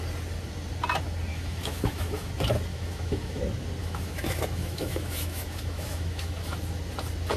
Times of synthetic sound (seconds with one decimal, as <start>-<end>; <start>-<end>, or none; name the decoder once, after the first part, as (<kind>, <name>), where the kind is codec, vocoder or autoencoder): 1.3-2.3 (autoencoder, DAC-VAE); 2.7-3.4; 3.8-6.5